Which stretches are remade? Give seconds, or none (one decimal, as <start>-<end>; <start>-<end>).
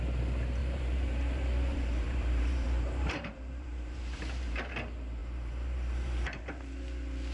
0.6-4.7; 5.2-6.4